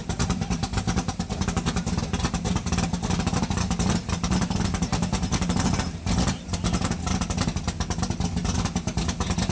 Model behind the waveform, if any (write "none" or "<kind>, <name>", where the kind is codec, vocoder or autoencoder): none